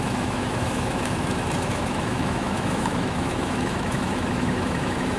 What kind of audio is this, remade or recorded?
remade